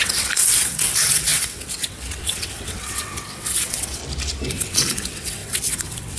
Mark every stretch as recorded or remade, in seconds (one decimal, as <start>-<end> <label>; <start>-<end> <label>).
0.0-4.0 remade; 4.0-4.5 recorded; 4.5-6.2 remade